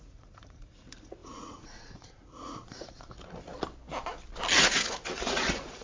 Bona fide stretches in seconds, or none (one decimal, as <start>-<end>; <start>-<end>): 3.5-4.6